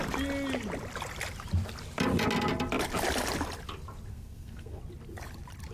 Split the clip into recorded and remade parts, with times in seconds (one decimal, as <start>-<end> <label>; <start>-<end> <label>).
0.0-4.1 recorded; 4.1-4.8 remade; 4.8-5.7 recorded